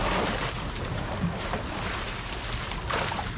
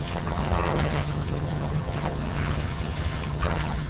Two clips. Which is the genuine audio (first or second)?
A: first